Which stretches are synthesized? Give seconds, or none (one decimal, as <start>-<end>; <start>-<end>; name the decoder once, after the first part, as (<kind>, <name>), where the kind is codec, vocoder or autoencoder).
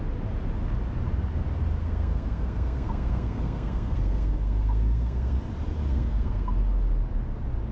1.8-5.4 (codec, SNAC); 5.9-6.5